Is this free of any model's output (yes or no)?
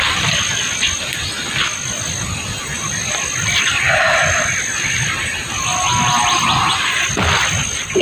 yes